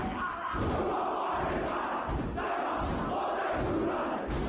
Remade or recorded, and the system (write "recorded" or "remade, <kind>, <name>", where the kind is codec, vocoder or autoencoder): recorded